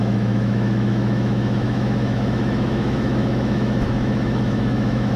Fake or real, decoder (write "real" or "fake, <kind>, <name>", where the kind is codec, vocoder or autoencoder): fake, autoencoder, DAC-VAE